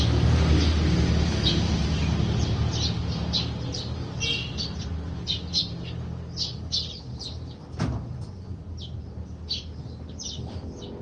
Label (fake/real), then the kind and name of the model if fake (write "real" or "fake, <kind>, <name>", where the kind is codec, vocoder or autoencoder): real